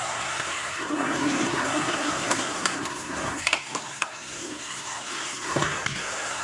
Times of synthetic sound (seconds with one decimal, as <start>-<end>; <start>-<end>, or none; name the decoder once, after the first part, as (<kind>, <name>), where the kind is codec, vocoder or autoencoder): 0.0-6.4 (codec, SNAC)